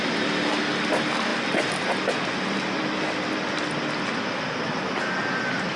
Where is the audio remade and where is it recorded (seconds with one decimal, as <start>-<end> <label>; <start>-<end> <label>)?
0.0-1.3 recorded; 1.3-4.7 remade; 4.7-5.8 recorded

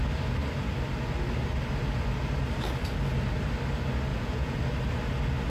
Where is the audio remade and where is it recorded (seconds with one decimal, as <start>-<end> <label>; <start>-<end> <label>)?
0.0-4.1 recorded; 4.1-4.6 remade; 4.6-5.5 recorded

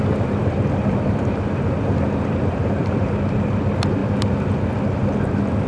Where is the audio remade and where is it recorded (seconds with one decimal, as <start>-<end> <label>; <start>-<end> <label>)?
0.0-5.7 recorded

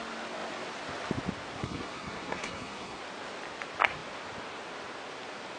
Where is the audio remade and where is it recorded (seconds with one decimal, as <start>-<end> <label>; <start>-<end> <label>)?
0.0-1.6 recorded; 1.6-3.0 remade; 3.0-5.6 recorded

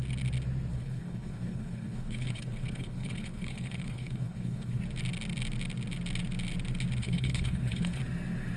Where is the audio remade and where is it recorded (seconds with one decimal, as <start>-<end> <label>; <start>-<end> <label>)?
0.0-0.7 recorded; 0.7-4.8 remade; 4.8-7.0 recorded; 7.0-8.0 remade; 8.0-8.6 recorded

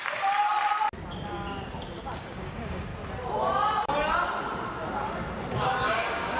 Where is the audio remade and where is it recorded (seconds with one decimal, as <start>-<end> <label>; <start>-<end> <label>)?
0.0-0.5 remade; 0.5-2.0 recorded; 2.0-2.9 remade; 2.9-5.5 recorded; 5.5-6.4 remade

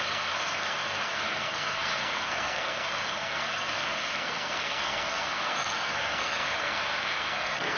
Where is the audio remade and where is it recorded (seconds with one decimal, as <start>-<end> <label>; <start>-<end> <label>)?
0.0-7.8 remade